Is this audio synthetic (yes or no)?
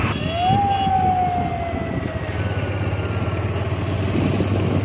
no